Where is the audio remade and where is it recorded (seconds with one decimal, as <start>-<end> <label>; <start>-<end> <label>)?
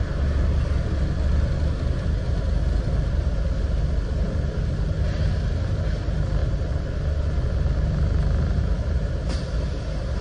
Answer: 0.0-10.2 recorded